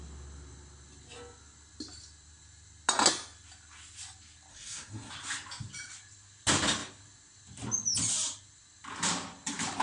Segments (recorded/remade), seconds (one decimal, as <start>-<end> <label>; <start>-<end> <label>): 0.0-4.5 recorded; 4.5-5.1 remade; 5.1-9.8 recorded